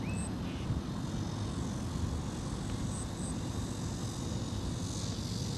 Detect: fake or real real